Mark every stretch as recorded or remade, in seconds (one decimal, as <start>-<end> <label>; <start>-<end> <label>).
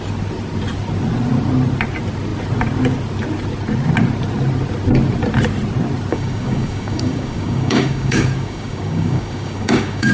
0.0-6.1 recorded; 6.1-10.1 remade